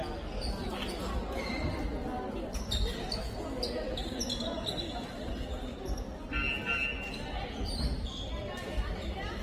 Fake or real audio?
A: real